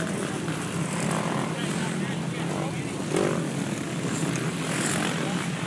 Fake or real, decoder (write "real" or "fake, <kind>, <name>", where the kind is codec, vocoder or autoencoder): real